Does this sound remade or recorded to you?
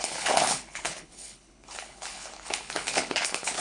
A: remade